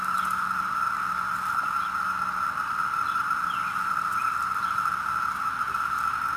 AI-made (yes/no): no